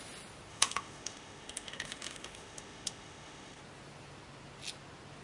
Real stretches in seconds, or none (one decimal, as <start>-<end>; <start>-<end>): 0.0-0.5; 3.6-5.2